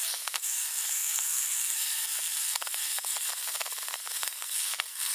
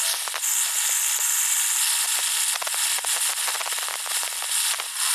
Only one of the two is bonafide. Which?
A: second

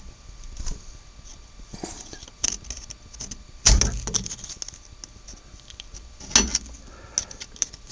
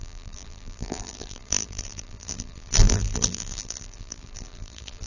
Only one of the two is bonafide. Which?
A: first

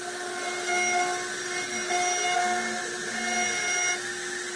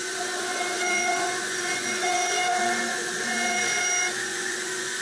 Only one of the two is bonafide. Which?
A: first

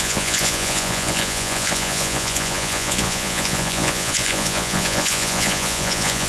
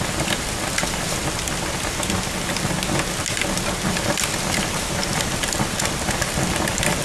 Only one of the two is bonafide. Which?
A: second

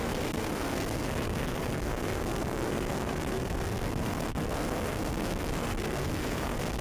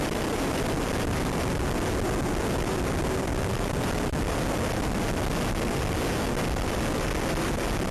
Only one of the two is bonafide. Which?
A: second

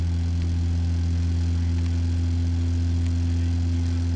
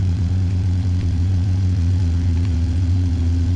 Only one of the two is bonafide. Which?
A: first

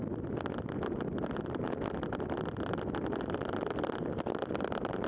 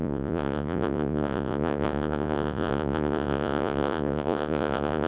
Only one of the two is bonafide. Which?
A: first